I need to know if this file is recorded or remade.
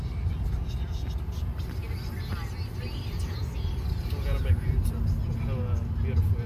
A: recorded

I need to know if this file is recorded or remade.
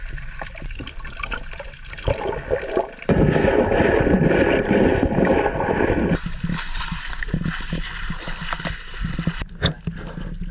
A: recorded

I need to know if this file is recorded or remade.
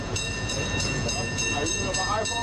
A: remade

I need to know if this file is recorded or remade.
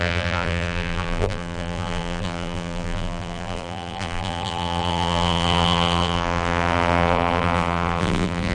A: remade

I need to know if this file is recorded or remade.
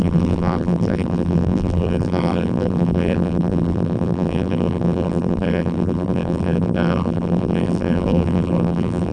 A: remade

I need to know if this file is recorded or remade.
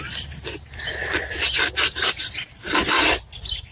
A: remade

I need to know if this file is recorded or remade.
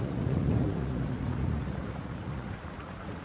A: remade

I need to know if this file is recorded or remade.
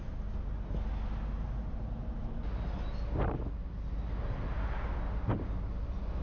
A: recorded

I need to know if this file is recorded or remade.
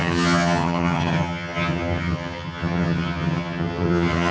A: remade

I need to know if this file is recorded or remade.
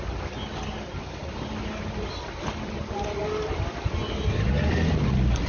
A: recorded